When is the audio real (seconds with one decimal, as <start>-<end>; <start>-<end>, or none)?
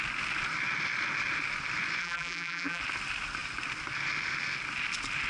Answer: 0.0-2.0; 2.8-5.3